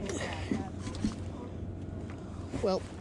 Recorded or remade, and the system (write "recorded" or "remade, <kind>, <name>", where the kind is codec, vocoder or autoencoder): recorded